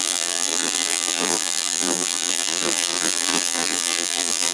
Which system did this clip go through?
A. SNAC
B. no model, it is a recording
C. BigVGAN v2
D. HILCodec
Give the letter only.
C